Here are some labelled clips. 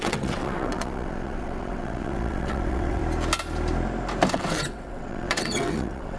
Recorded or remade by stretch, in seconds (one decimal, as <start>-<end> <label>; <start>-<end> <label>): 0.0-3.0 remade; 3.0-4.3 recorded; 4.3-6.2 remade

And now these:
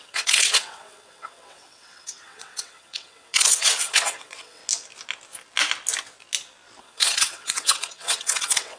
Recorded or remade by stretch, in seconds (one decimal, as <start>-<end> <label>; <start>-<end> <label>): 0.0-4.6 remade; 4.6-6.8 recorded; 6.8-8.8 remade

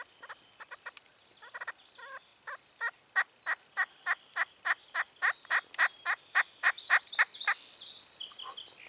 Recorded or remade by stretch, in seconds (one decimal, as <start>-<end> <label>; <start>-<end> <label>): 0.0-8.9 recorded

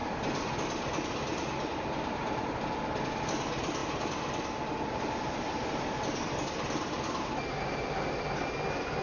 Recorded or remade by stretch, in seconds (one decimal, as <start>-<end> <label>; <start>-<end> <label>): 0.0-9.0 recorded